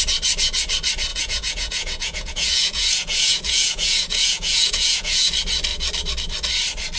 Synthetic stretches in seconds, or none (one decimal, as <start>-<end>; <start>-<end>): 1.1-5.3